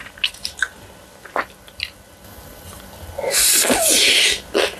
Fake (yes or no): no